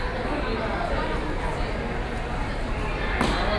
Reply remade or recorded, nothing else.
recorded